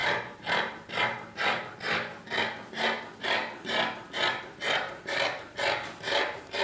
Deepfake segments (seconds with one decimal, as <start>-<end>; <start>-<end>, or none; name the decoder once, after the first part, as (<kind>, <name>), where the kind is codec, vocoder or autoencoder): 0.0-0.9 (vocoder, BigVGAN v2)